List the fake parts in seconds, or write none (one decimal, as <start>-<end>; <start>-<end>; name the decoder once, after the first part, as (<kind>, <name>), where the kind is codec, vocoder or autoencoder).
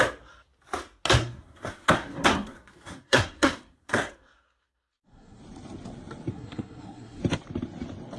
1.2-5.4 (codec, SNAC); 6.3-7.2